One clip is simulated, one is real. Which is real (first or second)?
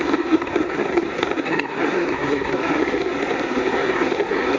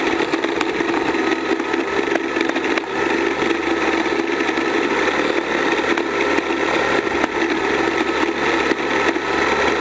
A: second